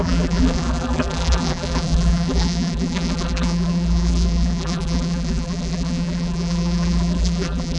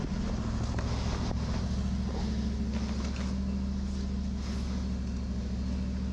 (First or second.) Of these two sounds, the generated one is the first